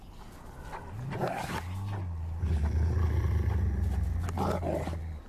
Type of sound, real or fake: real